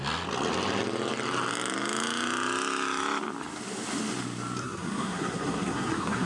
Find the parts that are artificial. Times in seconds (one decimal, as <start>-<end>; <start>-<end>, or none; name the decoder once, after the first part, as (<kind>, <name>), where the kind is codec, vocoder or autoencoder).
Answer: 4.6-6.3 (codec, SNAC)